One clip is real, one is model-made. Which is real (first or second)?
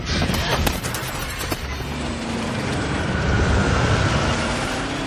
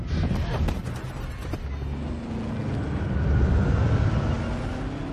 second